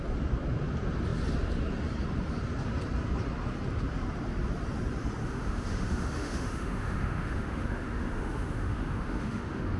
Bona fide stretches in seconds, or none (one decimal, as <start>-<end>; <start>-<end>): 0.0-5.2